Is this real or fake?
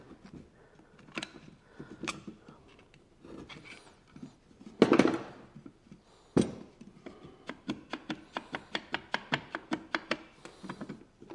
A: real